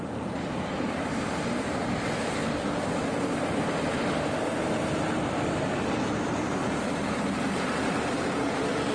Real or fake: fake